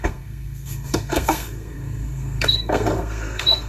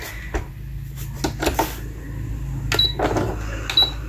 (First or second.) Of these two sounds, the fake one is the first